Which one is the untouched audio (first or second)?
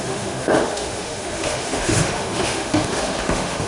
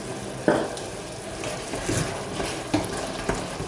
second